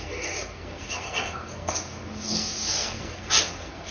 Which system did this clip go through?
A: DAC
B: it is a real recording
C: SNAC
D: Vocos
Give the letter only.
C